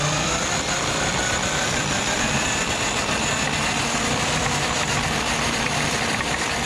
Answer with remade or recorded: remade